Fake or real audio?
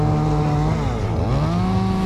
real